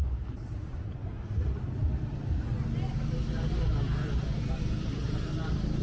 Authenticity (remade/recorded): recorded